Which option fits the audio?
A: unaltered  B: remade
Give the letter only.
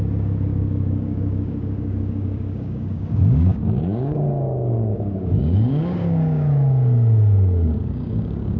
B